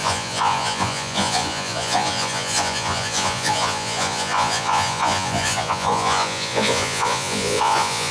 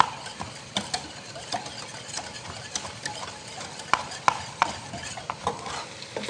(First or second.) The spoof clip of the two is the first